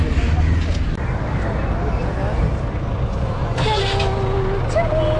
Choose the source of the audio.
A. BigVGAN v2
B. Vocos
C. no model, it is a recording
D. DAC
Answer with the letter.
C